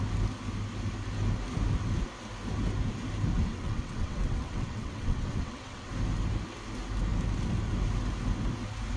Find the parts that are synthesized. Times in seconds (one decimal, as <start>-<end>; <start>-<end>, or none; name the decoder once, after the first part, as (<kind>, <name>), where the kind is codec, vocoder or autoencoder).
3.5-5.9 (vocoder, WaveNeXt)